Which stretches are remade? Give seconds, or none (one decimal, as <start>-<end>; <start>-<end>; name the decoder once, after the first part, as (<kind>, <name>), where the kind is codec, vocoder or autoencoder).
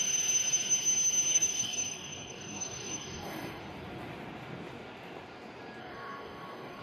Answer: 1.3-3.6 (codec, DAC); 5.8-6.8